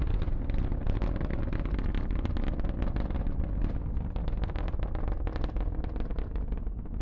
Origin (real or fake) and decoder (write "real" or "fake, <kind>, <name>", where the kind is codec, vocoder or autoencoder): real